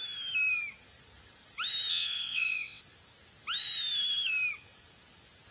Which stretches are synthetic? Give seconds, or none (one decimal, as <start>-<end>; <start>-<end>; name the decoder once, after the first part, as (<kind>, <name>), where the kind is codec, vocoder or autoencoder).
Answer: 1.9-2.8 (vocoder, WaveNeXt)